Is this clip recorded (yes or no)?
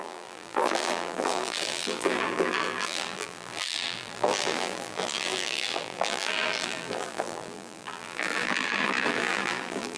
no